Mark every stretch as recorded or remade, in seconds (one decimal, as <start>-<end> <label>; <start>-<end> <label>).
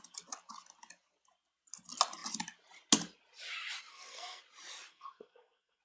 0.0-3.9 recorded; 3.9-4.4 remade; 4.4-4.9 recorded; 4.9-5.8 remade